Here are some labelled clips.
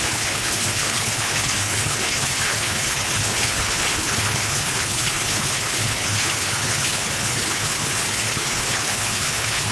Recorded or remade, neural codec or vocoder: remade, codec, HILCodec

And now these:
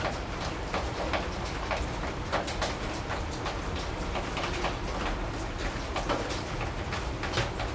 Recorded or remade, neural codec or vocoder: recorded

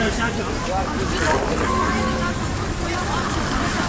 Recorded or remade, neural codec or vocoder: recorded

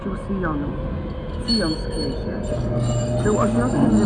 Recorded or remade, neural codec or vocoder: recorded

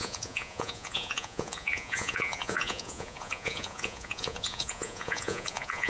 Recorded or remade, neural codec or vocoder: remade, vocoder, Vocos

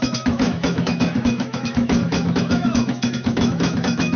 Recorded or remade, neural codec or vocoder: remade, autoencoder, DAC-VAE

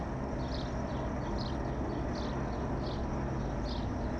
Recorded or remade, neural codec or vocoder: recorded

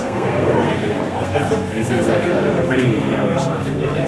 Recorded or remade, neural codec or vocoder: remade, codec, SNAC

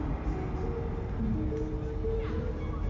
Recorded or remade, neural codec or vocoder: recorded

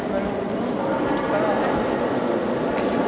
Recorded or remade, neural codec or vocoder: recorded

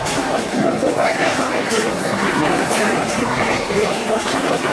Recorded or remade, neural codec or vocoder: remade, codec, SNAC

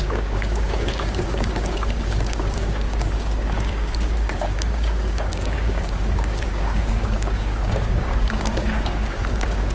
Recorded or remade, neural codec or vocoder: remade, codec, DAC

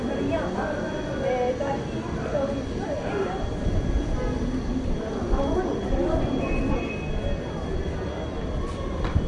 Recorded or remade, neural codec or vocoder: recorded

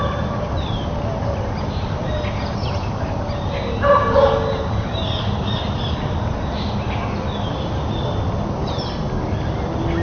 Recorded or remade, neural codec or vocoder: recorded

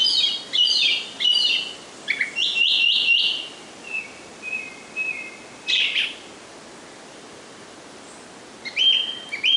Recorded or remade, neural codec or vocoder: recorded